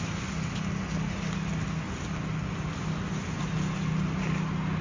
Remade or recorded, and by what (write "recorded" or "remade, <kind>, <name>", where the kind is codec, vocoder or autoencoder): recorded